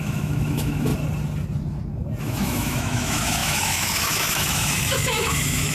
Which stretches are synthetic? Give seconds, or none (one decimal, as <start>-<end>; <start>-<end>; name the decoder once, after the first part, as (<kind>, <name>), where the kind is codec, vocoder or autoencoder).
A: 0.0-0.9 (autoencoder, DAC-VAE); 2.2-5.7